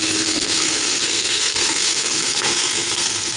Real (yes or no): no